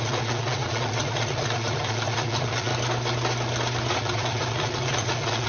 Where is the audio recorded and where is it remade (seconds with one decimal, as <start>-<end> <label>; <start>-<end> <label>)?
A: 0.0-2.7 remade; 2.7-3.9 recorded; 3.9-5.5 remade